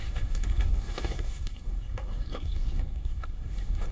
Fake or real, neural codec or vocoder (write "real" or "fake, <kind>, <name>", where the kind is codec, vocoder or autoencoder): fake, codec, SNAC